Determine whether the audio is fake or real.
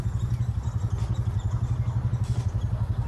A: real